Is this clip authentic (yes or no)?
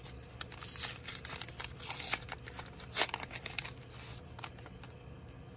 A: yes